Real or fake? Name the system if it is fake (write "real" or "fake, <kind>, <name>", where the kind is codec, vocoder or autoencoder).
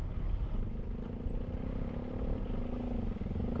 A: real